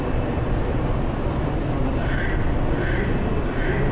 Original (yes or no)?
yes